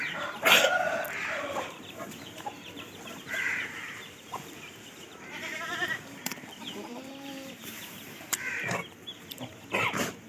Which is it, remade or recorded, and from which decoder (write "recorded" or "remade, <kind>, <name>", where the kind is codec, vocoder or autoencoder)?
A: remade, vocoder, BigVGAN v2